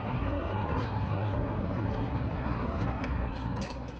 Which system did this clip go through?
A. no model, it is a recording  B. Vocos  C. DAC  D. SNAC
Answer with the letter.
D